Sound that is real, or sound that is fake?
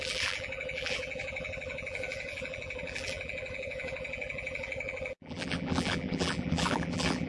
fake